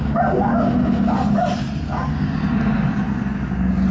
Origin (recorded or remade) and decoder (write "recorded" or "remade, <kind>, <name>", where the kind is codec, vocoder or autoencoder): recorded